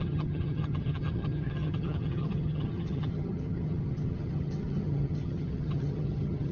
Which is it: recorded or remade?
remade